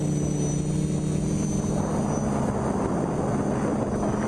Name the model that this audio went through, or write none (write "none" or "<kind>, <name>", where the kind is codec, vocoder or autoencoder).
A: none